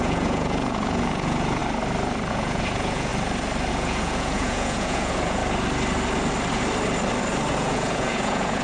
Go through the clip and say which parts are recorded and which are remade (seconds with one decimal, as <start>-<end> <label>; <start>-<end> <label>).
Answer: 0.0-1.6 remade; 1.6-2.3 recorded; 2.3-3.1 remade; 3.1-3.7 recorded; 3.7-5.4 remade; 5.4-7.5 recorded; 7.5-8.6 remade